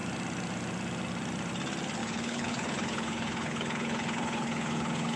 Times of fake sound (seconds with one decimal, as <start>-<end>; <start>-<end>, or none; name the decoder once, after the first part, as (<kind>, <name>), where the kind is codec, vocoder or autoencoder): 2.0-5.2 (codec, HILCodec)